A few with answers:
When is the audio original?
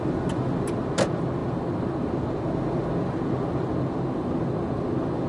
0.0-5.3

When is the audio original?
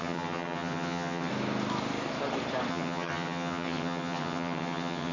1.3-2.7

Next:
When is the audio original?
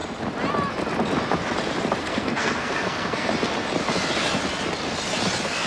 0.0-2.0; 3.3-5.7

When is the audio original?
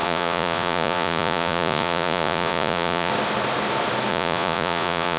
3.1-4.1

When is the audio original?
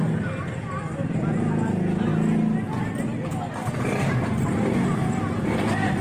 0.0-6.0